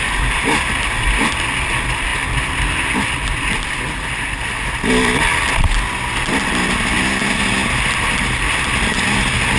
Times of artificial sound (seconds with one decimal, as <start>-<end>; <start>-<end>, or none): none